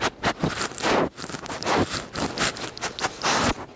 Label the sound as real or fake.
real